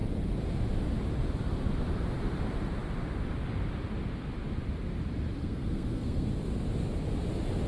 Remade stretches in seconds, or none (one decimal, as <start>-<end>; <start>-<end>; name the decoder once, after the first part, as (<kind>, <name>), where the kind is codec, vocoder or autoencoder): 5.4-6.3 (codec, SNAC)

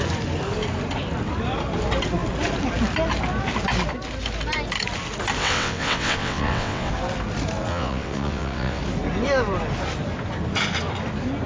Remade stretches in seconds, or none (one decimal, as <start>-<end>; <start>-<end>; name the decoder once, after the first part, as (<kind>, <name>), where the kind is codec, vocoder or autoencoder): 5.4-6.9 (vocoder, WaveNeXt); 7.7-8.8

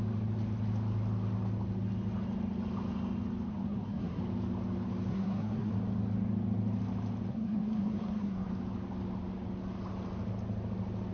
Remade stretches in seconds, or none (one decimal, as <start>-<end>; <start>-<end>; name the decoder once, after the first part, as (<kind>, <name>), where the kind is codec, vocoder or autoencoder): 3.5-4.2 (codec, SNAC); 5.1-5.7; 7.3-8.5